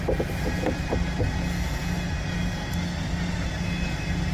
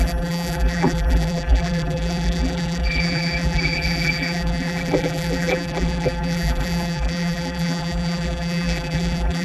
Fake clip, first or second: second